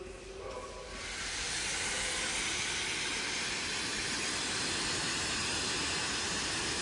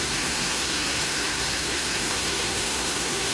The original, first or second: first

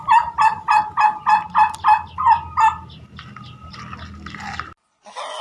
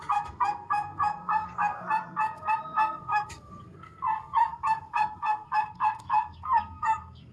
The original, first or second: first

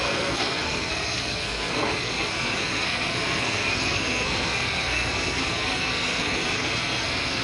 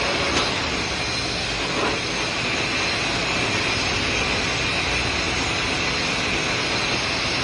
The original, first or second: second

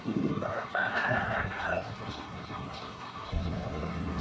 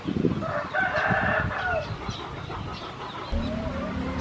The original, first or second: second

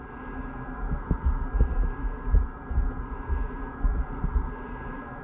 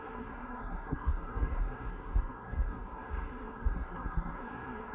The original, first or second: first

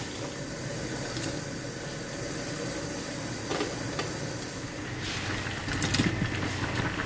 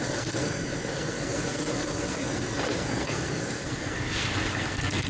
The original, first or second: first